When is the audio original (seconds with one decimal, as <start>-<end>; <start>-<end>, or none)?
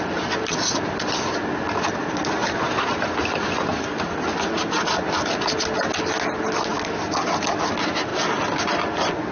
0.0-2.4; 4.4-9.3